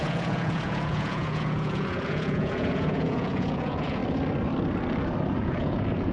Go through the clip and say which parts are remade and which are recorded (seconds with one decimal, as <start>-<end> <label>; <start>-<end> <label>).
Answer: 0.0-4.0 remade; 4.0-5.4 recorded; 5.4-6.1 remade